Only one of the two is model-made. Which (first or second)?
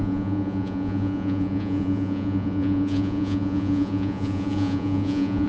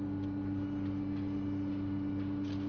first